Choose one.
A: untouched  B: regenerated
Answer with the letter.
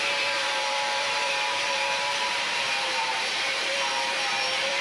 B